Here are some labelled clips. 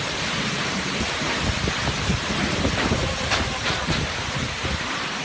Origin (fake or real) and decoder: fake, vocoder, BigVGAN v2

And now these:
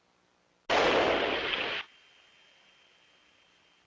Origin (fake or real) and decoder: real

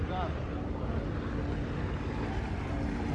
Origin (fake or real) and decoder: real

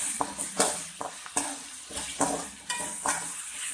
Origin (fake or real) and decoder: real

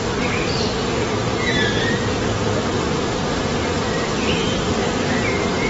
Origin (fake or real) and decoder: real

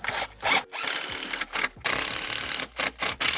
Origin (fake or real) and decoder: real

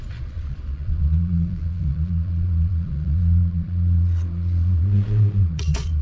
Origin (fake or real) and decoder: fake, vocoder, Vocos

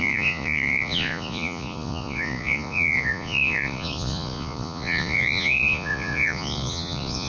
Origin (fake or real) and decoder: fake, vocoder, Vocos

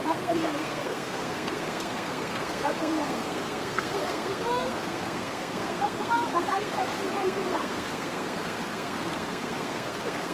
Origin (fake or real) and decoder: fake, codec, SNAC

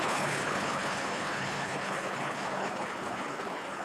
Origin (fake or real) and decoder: fake, codec, HILCodec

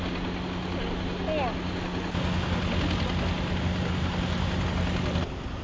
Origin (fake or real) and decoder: real